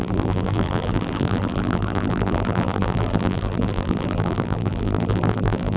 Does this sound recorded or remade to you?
remade